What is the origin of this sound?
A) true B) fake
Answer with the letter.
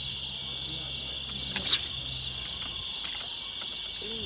A